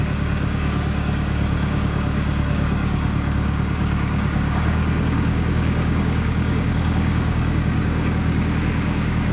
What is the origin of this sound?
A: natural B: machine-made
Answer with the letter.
B